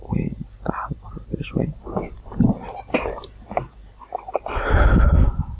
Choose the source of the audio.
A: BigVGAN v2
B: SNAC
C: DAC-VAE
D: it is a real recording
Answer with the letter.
A